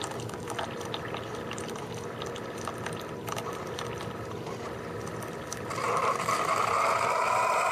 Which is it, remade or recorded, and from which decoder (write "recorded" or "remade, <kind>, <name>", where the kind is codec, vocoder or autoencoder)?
recorded